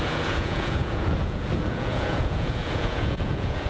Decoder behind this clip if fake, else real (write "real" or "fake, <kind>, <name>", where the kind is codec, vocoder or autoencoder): fake, vocoder, Vocos